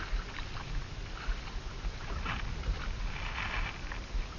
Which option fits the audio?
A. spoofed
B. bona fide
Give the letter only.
B